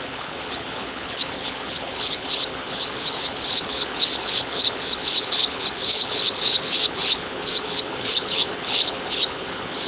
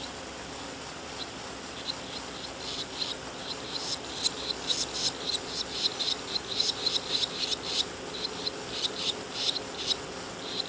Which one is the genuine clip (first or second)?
second